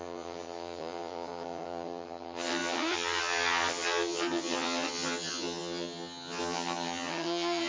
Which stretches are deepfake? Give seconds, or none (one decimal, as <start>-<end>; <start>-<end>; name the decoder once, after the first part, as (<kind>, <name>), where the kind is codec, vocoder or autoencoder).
0.0-7.7 (vocoder, HiFi-GAN)